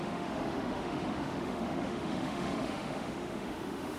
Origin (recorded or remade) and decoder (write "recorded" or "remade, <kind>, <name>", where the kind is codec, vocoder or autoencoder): remade, autoencoder, DAC-VAE